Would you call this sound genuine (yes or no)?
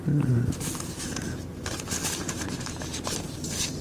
no